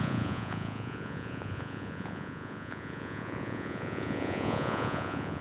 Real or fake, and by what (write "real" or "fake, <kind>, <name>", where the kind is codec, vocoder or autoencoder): fake, vocoder, Vocos